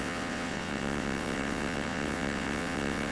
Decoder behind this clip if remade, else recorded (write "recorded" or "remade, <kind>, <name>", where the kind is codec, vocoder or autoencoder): remade, vocoder, WaveNeXt